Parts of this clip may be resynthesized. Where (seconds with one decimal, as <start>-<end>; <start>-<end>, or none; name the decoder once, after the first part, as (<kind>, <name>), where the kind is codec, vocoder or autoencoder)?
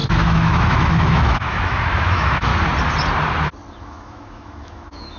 0.0-2.5 (autoencoder, DAC-VAE); 3.8-5.2